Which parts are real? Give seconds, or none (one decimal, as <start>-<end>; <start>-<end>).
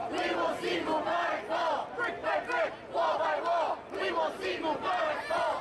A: 1.3-5.6